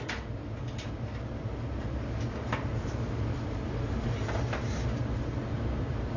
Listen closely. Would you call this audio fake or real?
real